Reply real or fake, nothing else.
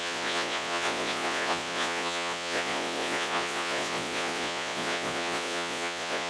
fake